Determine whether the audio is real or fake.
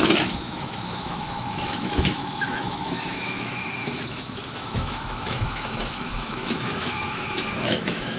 fake